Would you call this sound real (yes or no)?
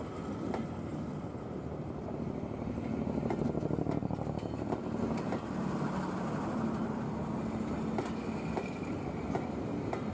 yes